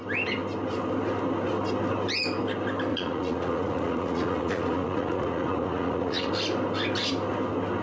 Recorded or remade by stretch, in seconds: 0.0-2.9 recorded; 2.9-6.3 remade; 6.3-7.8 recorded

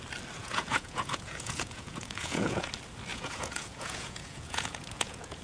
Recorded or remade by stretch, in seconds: 0.0-0.4 recorded; 0.4-2.7 remade; 2.7-3.1 recorded; 3.1-5.4 remade

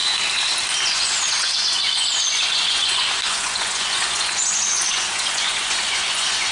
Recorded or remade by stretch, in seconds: 0.0-0.9 recorded; 0.9-6.5 remade

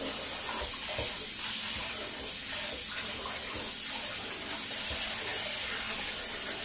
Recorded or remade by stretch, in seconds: 0.0-6.6 recorded